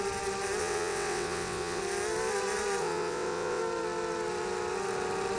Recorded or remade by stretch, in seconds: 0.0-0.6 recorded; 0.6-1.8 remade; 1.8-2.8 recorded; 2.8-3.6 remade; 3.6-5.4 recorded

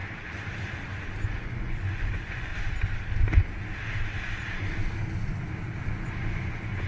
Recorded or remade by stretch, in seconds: 0.0-1.3 recorded; 1.3-2.5 remade; 2.5-5.9 recorded; 5.9-6.9 remade

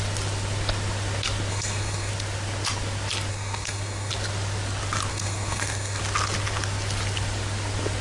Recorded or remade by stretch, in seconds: 0.0-1.5 recorded; 1.5-2.1 remade; 2.1-3.3 recorded; 3.3-4.1 remade; 4.1-5.1 recorded; 5.1-6.0 remade; 6.0-8.0 recorded

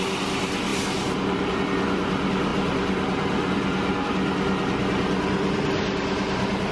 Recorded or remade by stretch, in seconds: 0.0-0.7 recorded; 0.7-1.6 remade; 1.6-6.7 recorded

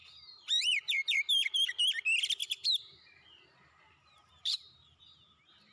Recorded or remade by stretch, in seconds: 0.0-1.8 remade; 1.8-2.4 recorded; 2.4-5.0 remade; 5.0-5.7 recorded

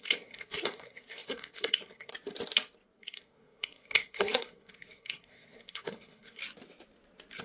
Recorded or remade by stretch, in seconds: 0.0-2.1 remade; 2.1-3.0 recorded; 3.0-6.4 remade; 6.4-7.4 recorded